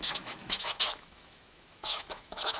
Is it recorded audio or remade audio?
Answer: remade